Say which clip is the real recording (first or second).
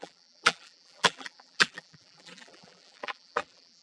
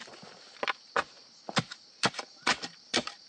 second